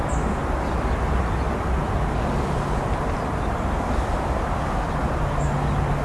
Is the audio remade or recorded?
recorded